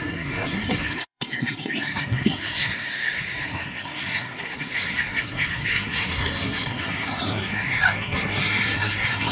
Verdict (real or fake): fake